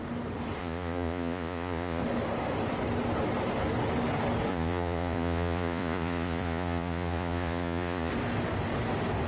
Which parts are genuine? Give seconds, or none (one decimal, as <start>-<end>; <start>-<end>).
0.0-0.6; 2.0-4.5; 8.1-9.3